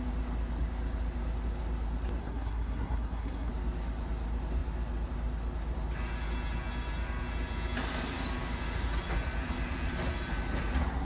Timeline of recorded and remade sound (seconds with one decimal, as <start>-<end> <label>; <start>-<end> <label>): 0.0-2.2 recorded; 2.2-3.5 remade; 3.5-11.0 recorded